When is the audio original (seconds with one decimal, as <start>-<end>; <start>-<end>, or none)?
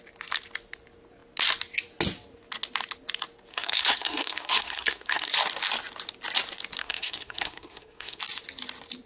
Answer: 0.0-3.5; 5.3-6.8; 8.2-9.1